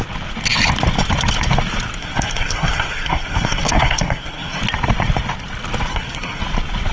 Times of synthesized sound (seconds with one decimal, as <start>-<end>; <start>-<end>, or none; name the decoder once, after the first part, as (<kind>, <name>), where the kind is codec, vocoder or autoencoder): 2.0-4.6 (codec, SNAC); 5.9-6.4